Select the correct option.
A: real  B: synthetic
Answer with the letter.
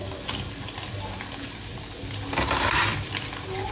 A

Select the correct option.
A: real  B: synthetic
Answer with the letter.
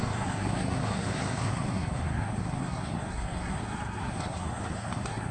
B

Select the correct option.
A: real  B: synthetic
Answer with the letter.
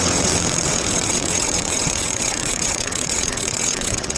B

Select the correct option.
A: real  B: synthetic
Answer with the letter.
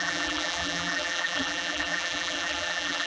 B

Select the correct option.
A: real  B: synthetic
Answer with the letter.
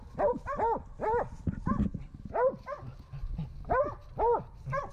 A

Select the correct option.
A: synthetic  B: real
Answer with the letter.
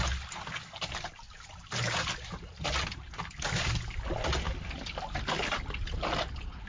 B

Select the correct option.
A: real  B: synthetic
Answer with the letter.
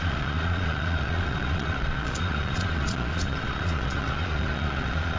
B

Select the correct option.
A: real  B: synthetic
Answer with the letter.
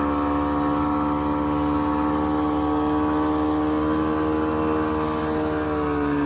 A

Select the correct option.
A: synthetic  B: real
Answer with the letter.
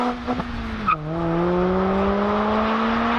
B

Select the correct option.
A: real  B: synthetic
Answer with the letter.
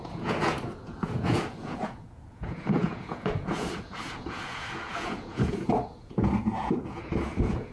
B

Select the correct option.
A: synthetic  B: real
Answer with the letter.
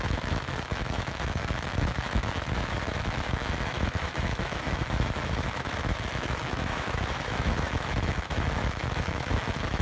A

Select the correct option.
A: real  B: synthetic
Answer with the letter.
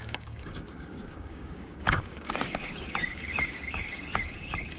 B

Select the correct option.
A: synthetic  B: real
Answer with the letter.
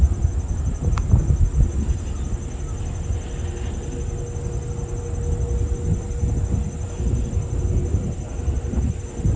B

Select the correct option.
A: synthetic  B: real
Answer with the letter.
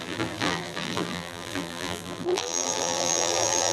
A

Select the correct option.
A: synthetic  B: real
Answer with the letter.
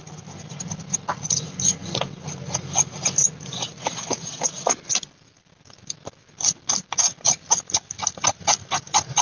B